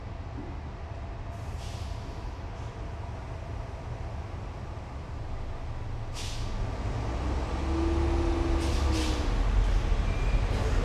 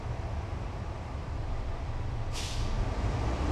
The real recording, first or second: first